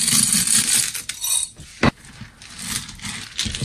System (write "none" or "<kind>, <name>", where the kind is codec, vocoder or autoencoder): none